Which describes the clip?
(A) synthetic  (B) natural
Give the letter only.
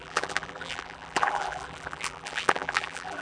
A